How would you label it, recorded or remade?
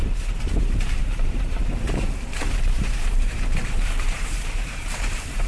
remade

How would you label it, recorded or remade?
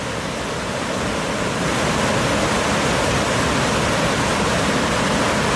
recorded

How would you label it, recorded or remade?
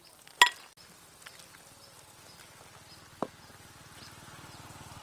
recorded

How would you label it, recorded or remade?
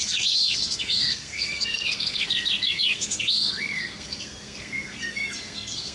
remade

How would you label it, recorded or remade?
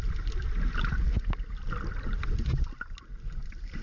remade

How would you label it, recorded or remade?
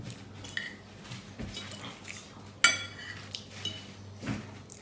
recorded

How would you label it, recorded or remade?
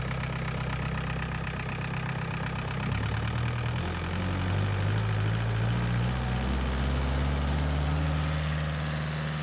recorded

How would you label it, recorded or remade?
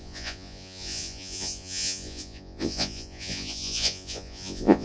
remade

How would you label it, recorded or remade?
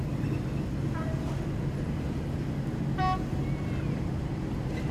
recorded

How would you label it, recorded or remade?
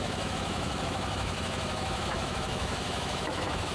remade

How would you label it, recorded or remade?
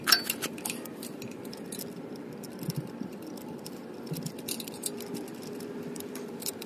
remade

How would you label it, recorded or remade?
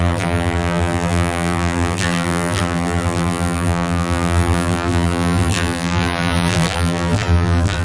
remade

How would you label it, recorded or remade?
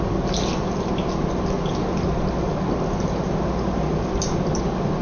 recorded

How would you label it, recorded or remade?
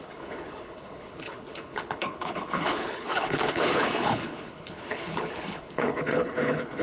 remade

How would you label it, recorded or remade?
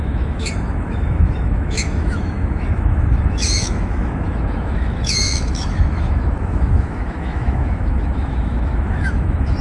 remade